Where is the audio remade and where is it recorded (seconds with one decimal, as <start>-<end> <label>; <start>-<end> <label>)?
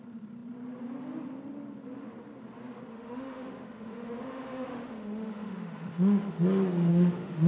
0.0-2.9 recorded; 2.9-6.4 remade; 6.4-6.9 recorded; 6.9-7.5 remade